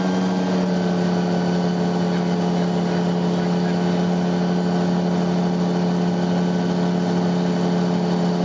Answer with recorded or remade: recorded